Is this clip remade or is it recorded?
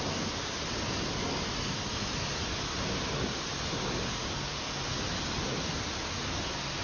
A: recorded